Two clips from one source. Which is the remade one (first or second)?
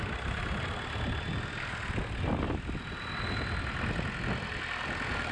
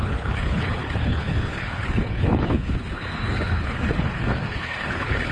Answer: second